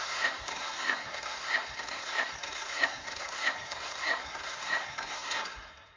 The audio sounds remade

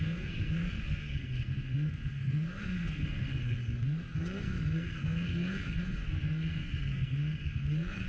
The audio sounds remade